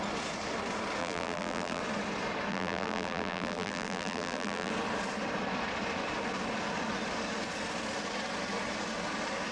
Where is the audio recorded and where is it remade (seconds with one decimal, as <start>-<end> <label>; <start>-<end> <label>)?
0.0-1.0 recorded; 1.0-1.8 remade; 1.8-2.5 recorded; 2.5-4.7 remade; 4.7-9.5 recorded